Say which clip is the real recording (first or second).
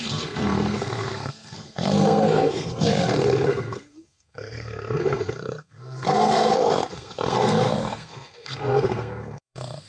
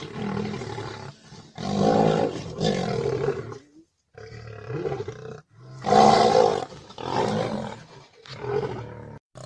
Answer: second